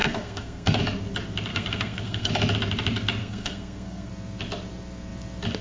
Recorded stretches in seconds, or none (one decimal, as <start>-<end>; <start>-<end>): 0.8-1.5; 2.3-3.2; 4.1-5.6